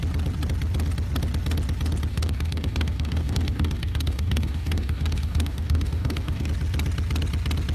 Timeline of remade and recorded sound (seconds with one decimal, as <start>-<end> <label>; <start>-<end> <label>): 0.0-2.1 recorded; 2.1-6.5 remade; 6.5-7.7 recorded